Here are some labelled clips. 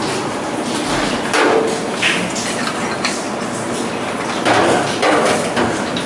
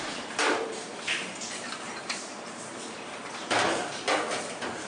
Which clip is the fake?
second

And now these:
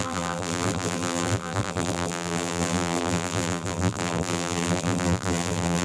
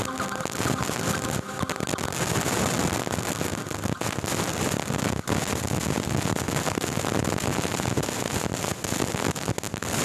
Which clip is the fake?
first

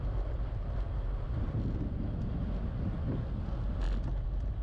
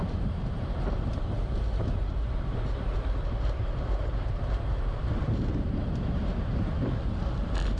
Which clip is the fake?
second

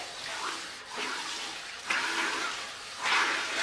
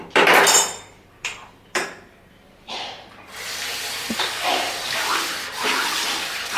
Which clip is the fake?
second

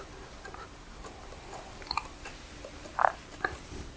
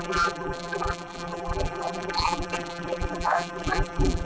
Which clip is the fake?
second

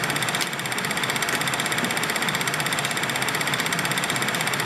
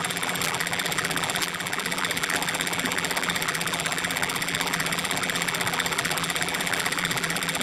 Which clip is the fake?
second